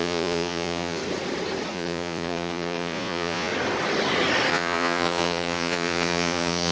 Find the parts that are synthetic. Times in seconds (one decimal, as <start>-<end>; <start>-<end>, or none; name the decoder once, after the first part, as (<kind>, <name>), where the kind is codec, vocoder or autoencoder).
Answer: 0.0-1.0 (vocoder, Vocos); 1.7-3.5; 4.5-6.7